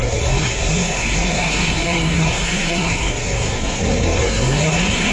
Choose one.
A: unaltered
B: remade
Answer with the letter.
B